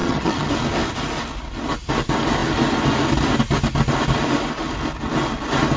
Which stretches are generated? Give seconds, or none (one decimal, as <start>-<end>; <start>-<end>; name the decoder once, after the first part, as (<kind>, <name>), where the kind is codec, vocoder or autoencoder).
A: 0.0-0.5 (vocoder, HiFi-GAN)